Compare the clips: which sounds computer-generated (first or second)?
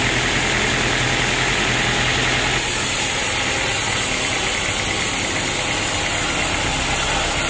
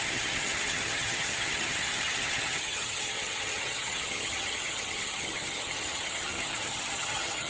second